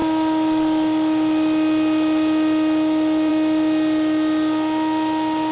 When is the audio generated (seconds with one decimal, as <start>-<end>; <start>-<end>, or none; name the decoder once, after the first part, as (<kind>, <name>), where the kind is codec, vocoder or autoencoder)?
none